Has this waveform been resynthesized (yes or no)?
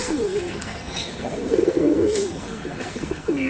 yes